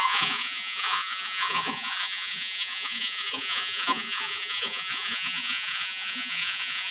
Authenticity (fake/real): fake